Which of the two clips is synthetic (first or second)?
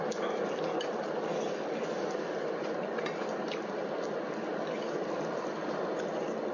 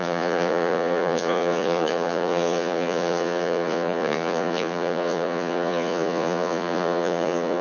second